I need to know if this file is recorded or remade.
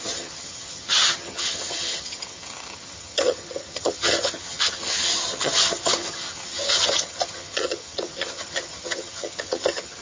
remade